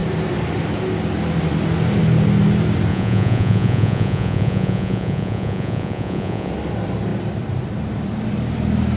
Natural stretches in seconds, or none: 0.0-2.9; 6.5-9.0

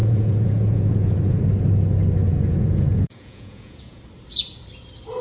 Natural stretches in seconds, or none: 1.4-2.3; 4.0-5.2

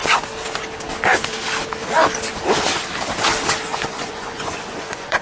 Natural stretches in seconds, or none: 0.0-3.7

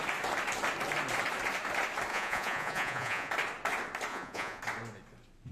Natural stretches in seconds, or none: 0.0-2.1; 3.3-4.1; 4.6-5.5

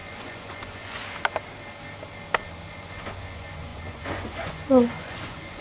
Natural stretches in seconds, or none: 1.0-2.7

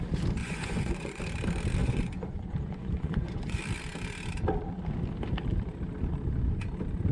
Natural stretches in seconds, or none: 0.0-0.4; 1.2-1.8; 3.6-7.1

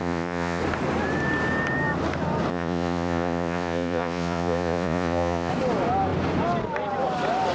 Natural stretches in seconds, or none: 0.6-2.5; 5.5-7.5

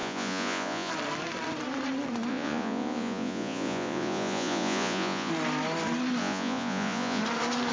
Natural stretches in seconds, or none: 0.9-2.3; 5.3-6.2; 7.2-7.7